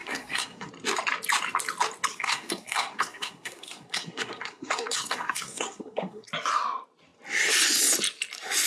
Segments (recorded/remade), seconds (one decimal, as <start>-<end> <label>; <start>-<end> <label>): 0.0-0.7 remade; 0.7-2.1 recorded; 2.1-6.3 remade; 6.3-8.7 recorded